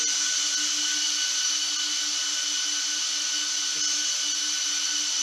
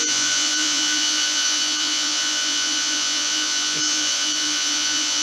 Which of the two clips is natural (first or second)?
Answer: first